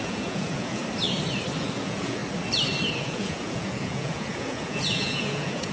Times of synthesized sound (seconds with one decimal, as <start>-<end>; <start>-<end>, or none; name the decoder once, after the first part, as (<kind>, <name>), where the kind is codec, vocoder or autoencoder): 0.0-0.8 (vocoder, Vocos); 1.6-2.2; 3.0-5.7